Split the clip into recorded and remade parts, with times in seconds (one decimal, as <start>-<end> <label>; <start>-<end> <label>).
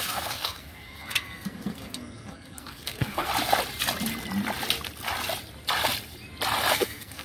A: 0.0-3.3 remade; 3.3-6.7 recorded; 6.7-7.2 remade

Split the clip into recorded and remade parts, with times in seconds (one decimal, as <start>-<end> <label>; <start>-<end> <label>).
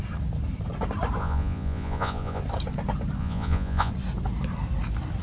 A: 0.0-1.2 recorded; 1.2-2.4 remade; 2.4-3.2 recorded; 3.2-3.9 remade; 3.9-5.2 recorded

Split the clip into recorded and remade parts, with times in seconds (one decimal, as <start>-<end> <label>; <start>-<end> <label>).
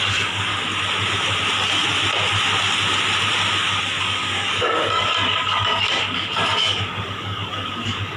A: 0.0-0.5 remade; 0.5-4.0 recorded; 4.0-8.2 remade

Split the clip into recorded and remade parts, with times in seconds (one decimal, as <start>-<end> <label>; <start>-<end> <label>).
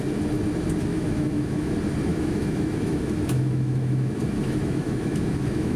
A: 0.0-0.9 recorded; 0.9-1.7 remade; 1.7-2.1 recorded; 2.1-5.8 remade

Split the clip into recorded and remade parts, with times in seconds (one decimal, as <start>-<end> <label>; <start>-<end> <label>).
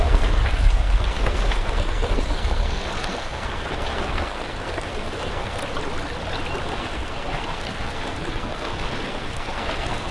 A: 0.0-5.6 remade; 5.6-6.6 recorded; 6.6-10.1 remade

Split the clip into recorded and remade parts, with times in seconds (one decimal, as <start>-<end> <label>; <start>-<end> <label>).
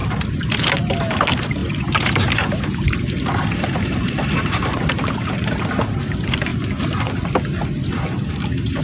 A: 0.0-6.5 remade; 6.5-8.3 recorded; 8.3-8.8 remade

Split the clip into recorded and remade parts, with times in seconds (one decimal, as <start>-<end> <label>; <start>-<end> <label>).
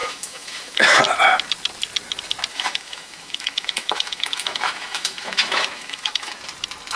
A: 0.0-1.0 remade; 1.0-2.5 recorded; 2.5-6.4 remade; 6.4-7.0 recorded